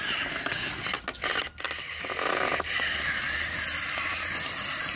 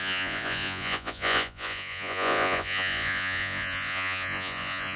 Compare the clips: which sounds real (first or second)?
first